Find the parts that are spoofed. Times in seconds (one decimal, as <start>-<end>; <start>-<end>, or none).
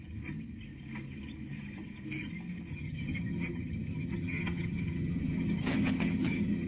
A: 2.7-6.7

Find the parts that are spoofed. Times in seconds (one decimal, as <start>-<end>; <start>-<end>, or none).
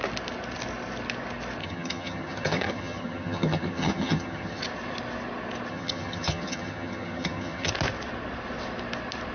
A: 1.6-4.6; 5.7-7.7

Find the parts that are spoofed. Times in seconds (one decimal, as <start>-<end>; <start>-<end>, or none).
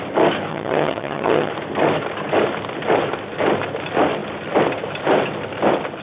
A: 0.5-1.5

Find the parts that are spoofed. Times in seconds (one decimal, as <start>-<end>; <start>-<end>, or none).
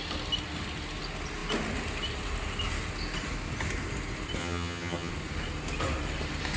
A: 4.4-5.1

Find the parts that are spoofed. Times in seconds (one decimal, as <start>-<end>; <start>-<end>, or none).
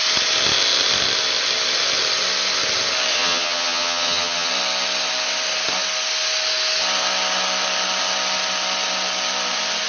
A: 3.1-4.5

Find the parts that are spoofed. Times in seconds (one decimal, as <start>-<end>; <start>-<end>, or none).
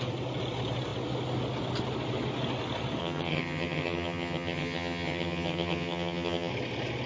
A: 3.0-6.5